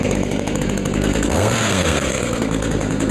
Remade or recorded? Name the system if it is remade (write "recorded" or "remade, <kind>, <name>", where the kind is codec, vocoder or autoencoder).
remade, codec, SNAC